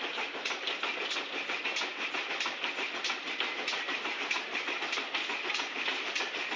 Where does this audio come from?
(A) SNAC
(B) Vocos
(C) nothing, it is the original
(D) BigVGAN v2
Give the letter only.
C